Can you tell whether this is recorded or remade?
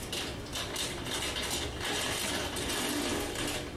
recorded